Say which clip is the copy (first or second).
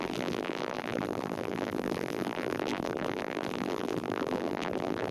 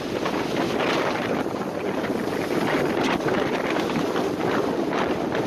first